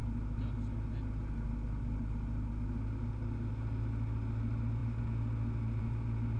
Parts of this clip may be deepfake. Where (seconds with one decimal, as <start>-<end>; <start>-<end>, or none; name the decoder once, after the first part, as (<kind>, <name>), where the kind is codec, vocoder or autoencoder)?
none